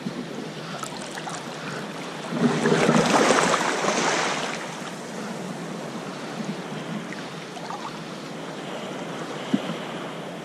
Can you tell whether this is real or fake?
real